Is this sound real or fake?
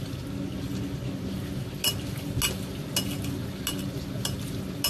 real